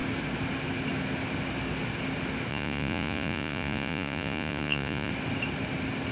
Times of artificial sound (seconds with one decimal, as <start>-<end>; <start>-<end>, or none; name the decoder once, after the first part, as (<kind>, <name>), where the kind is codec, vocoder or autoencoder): 2.5-5.1 (vocoder, Vocos)